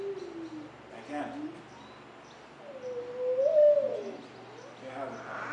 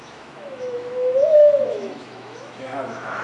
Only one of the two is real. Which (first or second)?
first